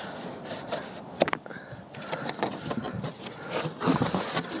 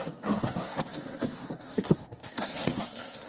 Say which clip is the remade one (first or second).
second